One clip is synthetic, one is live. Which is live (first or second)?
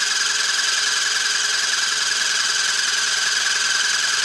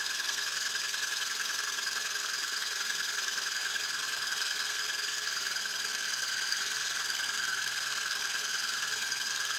first